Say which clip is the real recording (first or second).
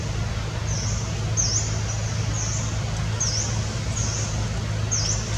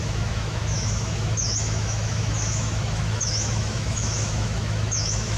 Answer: first